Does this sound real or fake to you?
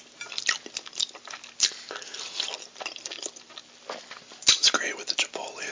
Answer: real